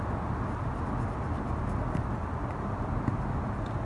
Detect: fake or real real